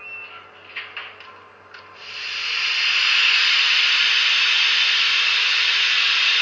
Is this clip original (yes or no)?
yes